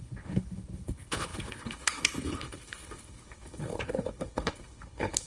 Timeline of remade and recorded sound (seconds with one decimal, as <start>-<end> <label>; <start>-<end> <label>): 0.0-5.3 remade